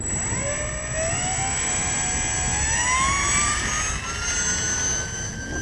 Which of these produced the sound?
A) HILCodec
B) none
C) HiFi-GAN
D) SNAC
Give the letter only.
B